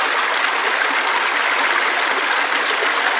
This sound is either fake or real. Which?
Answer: real